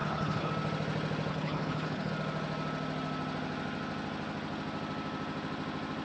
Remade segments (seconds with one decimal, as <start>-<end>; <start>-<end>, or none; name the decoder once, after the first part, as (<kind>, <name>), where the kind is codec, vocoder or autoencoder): 0.0-0.5 (codec, HILCodec); 1.3-2.1